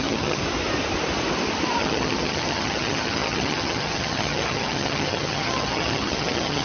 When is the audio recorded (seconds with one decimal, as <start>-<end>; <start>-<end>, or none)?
0.4-1.8